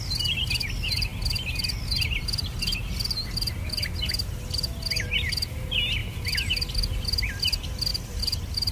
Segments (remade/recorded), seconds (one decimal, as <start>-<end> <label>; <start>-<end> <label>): 0.0-7.9 recorded; 7.9-8.7 remade